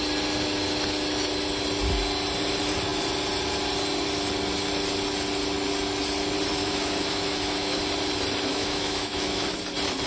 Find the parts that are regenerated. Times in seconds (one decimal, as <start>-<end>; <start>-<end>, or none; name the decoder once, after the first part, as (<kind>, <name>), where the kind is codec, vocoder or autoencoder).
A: 6.6-7.8 (autoencoder, DAC-VAE); 8.5-9.6